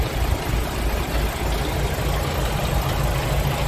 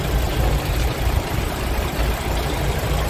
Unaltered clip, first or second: first